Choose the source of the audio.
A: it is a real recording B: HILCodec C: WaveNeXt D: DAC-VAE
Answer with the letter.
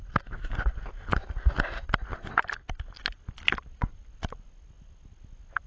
A